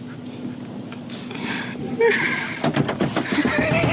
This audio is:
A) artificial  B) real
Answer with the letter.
B